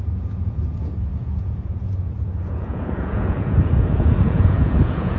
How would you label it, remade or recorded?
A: remade